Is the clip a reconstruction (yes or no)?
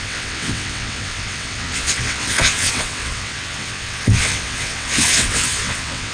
yes